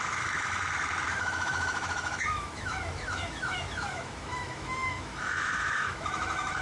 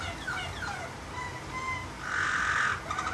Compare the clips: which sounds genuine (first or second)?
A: second